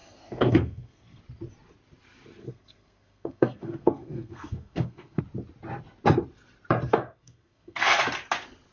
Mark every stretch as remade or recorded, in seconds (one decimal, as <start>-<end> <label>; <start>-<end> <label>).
0.0-1.2 remade; 1.2-2.4 recorded; 2.4-5.2 remade; 5.2-6.9 recorded; 6.9-8.0 remade; 8.0-8.7 recorded